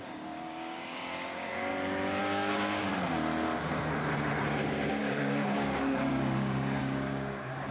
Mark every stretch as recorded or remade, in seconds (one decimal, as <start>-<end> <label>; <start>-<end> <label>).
0.0-1.7 remade; 1.7-2.2 recorded; 2.2-2.9 remade; 2.9-5.0 recorded; 5.0-7.7 remade